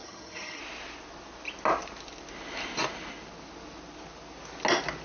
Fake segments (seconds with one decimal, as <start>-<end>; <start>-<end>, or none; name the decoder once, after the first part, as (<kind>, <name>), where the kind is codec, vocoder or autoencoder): 0.0-0.6 (vocoder, HiFi-GAN)